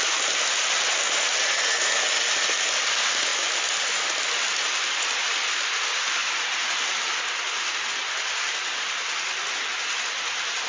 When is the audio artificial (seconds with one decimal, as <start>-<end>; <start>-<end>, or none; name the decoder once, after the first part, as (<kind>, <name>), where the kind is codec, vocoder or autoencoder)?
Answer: none